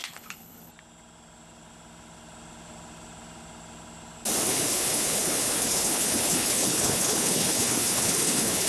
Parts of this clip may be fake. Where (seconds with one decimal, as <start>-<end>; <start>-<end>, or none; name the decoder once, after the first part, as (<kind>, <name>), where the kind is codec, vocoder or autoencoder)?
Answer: 0.0-0.7 (codec, HILCodec); 4.5-8.7